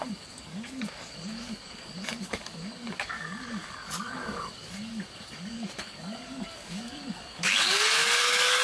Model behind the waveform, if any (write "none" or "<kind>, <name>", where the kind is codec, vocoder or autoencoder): codec, DAC